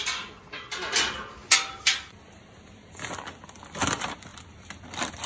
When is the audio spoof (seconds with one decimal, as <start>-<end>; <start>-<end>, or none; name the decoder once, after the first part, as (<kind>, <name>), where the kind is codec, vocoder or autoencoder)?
none